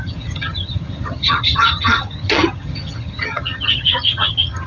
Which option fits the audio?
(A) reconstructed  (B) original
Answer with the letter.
A